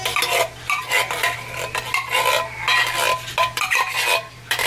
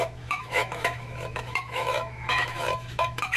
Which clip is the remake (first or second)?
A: second